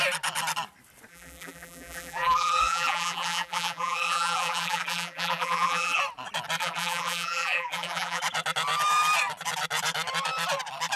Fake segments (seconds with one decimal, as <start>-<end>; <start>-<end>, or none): 1.1-6.0; 6.6-8.2